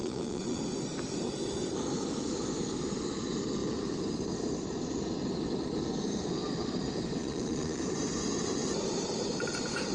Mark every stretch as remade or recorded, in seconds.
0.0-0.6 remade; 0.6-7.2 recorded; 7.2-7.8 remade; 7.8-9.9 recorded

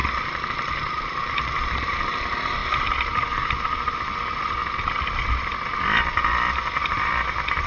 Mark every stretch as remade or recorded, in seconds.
0.0-7.7 recorded

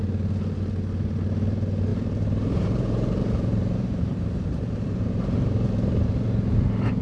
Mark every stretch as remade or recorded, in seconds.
0.0-1.9 recorded; 1.9-6.1 remade; 6.1-7.0 recorded

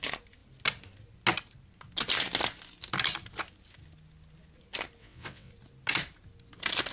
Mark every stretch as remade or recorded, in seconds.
0.0-5.0 recorded; 5.0-5.5 remade; 5.5-6.9 recorded

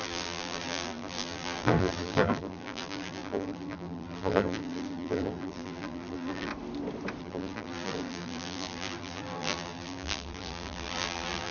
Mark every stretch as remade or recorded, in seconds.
0.0-6.5 remade; 6.5-7.2 recorded; 7.2-11.5 remade

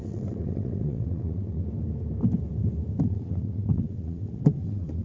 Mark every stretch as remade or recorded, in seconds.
0.0-1.6 remade; 1.6-3.0 recorded; 3.0-5.0 remade